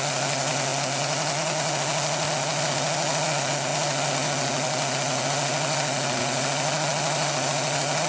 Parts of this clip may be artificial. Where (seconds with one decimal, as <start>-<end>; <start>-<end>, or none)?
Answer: none